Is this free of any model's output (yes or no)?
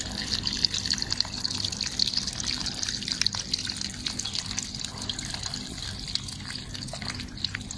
yes